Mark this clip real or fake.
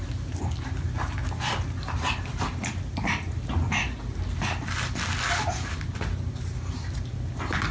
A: real